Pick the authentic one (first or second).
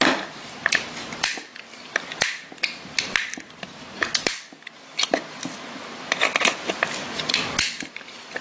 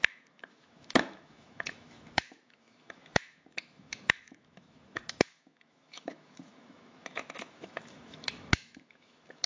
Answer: first